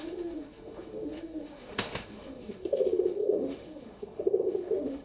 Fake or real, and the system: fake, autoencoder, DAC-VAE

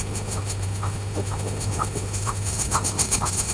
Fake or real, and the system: fake, autoencoder, DAC-VAE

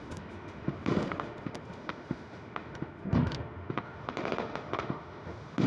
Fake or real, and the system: fake, autoencoder, DAC-VAE